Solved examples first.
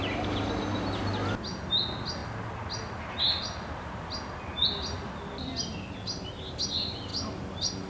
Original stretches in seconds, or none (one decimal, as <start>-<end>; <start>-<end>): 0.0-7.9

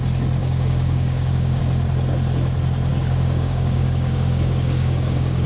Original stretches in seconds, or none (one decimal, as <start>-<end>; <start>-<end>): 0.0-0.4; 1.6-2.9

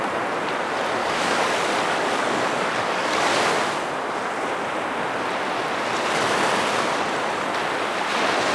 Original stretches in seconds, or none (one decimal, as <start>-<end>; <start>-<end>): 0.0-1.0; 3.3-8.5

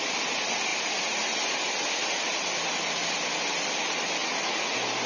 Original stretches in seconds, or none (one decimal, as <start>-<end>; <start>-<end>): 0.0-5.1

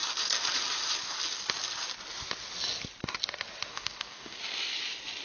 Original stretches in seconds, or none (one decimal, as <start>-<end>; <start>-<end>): 0.0-3.7; 4.4-5.2

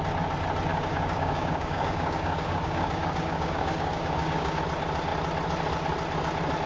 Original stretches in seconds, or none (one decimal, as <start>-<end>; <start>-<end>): 0.0-0.7; 4.6-6.7

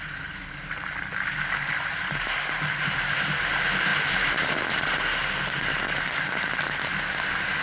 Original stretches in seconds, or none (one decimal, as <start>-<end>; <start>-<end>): 0.0-7.6